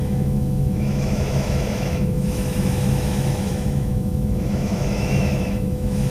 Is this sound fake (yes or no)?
yes